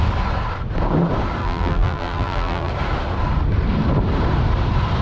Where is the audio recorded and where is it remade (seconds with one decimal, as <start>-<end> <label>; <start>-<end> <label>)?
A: 0.0-1.4 recorded; 1.4-2.7 remade; 2.7-5.0 recorded